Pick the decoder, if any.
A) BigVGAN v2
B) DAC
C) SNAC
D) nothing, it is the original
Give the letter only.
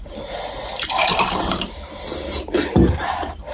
A